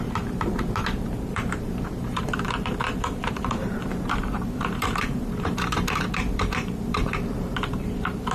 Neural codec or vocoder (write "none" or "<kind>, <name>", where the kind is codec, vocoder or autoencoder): vocoder, BigVGAN v2